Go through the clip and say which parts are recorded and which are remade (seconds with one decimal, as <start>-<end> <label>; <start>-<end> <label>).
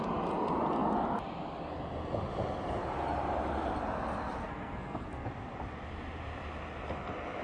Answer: 0.0-4.4 recorded; 4.4-5.3 remade; 5.3-7.4 recorded